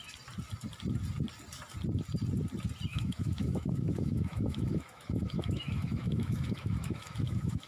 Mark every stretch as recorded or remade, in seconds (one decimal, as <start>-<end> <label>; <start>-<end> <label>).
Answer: 0.0-2.9 recorded; 2.9-7.7 remade